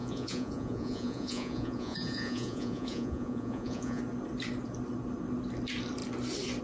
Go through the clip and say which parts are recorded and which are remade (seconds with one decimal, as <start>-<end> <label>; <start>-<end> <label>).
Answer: 0.0-4.0 remade; 4.0-6.6 recorded